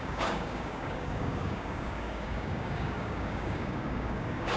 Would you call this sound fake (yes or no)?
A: yes